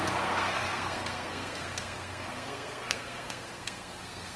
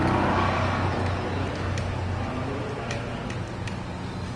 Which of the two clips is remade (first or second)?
first